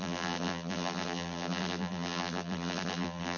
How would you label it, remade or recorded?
remade